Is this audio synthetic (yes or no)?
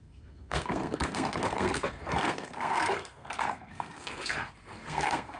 yes